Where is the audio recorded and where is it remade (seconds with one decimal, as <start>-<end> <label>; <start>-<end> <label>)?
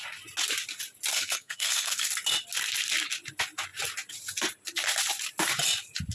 0.0-1.1 recorded; 1.1-2.1 remade; 2.1-6.1 recorded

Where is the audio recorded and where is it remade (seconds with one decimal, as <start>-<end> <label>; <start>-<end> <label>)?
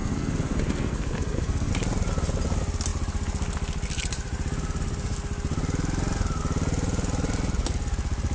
0.0-1.7 remade; 1.7-8.3 recorded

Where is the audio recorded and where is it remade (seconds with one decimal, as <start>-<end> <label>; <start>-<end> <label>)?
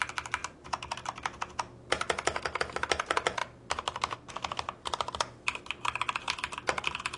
0.0-7.2 recorded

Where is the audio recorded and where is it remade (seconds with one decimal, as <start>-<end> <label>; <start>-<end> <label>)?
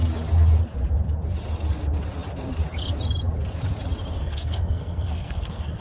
0.0-4.2 recorded; 4.2-5.8 remade